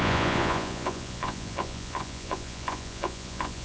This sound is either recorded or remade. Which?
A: remade